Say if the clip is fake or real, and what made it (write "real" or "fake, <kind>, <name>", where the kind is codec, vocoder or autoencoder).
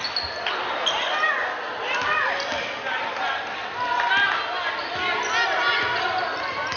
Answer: real